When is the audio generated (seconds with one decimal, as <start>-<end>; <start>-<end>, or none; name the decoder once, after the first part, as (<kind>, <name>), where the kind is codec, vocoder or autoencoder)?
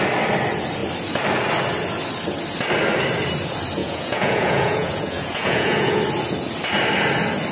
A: 3.8-6.0 (vocoder, Vocos)